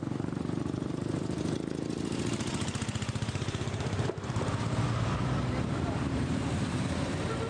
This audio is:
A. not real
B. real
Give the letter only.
A